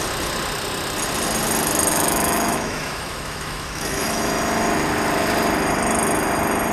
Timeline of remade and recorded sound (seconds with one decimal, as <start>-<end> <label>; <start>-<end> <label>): 0.0-1.9 recorded; 1.9-4.3 remade; 4.3-6.7 recorded

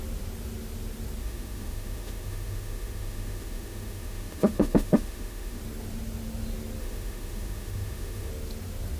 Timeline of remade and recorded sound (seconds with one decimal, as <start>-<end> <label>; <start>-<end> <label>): 0.0-1.2 recorded; 1.2-5.6 remade; 5.6-6.8 recorded; 6.8-8.3 remade; 8.3-9.0 recorded

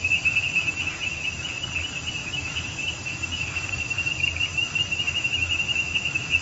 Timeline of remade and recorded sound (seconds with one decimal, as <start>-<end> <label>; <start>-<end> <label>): 0.0-0.5 recorded; 0.5-1.5 remade; 1.5-2.2 recorded; 2.2-4.1 remade; 4.1-4.5 recorded; 4.5-6.4 remade

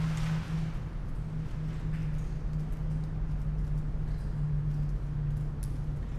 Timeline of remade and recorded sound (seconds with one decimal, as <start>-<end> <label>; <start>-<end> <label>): 0.0-6.2 recorded

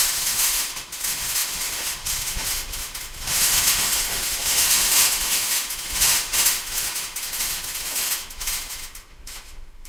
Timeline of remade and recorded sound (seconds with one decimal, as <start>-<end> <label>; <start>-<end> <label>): 0.0-9.9 remade

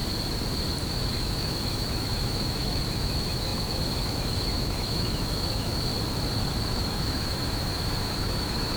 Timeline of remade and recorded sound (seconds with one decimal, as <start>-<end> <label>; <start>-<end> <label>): 0.0-0.9 recorded; 0.9-5.9 remade; 5.9-6.6 recorded; 6.6-8.8 remade

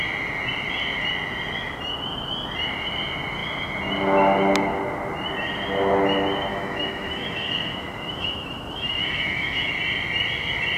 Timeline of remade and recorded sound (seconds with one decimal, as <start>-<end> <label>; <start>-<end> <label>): 0.0-6.5 recorded; 6.5-9.7 remade; 9.7-10.8 recorded

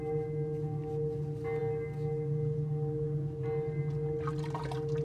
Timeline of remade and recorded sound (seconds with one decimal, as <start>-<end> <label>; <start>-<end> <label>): 0.0-5.0 recorded